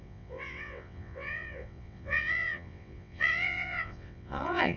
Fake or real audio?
fake